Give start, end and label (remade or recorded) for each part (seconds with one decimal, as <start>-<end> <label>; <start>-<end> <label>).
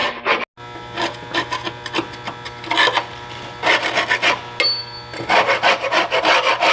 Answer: 0.0-6.7 recorded